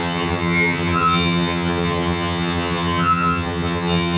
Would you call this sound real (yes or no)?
no